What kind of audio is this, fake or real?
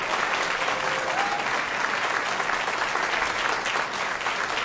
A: real